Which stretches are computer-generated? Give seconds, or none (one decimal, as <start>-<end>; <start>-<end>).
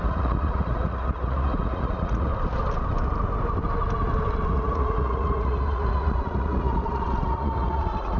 0.0-2.3; 4.5-8.2